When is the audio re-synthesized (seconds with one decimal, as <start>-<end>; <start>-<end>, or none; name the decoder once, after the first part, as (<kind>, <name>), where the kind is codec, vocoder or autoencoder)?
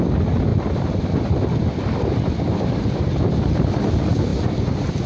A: 4.3-5.1 (vocoder, BigVGAN v2)